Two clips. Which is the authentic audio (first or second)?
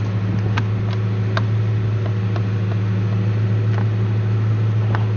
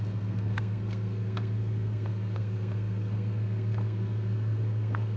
first